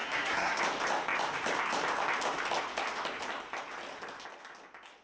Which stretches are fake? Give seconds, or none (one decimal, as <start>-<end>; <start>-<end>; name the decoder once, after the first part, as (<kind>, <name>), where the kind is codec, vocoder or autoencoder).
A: 0.0-0.6 (codec, SNAC)